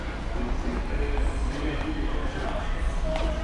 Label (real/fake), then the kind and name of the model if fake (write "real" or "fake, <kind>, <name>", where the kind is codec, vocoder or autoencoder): real